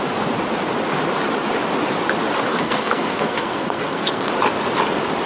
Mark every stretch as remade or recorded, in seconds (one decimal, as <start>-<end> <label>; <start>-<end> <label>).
0.0-2.5 recorded; 2.5-4.3 remade; 4.3-5.3 recorded